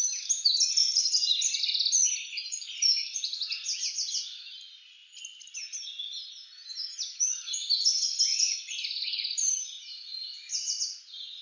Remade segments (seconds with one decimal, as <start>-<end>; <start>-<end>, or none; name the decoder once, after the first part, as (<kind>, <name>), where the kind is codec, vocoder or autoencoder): 0.8-1.6 (vocoder, BigVGAN v2); 8.3-10.8